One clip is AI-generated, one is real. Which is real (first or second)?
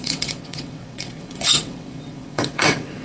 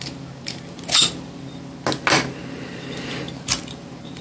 second